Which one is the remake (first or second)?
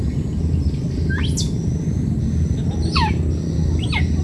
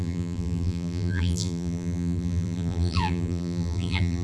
second